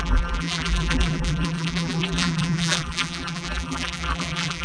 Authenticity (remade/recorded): remade